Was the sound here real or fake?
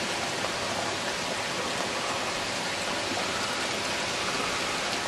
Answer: real